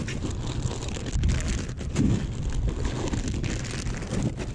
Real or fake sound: real